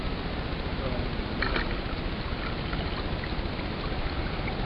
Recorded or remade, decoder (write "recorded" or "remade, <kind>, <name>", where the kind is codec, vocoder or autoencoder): recorded